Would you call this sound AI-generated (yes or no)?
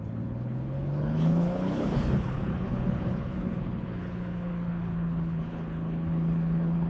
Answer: yes